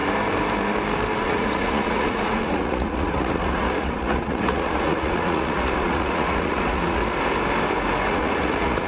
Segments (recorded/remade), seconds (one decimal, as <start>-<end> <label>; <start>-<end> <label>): 0.0-1.2 recorded; 1.2-7.0 remade; 7.0-8.1 recorded; 8.1-8.9 remade